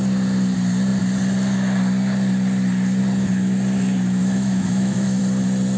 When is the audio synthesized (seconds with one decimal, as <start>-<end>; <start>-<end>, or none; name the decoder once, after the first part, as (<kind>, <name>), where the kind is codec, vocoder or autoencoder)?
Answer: 4.2-5.2 (autoencoder, DAC-VAE)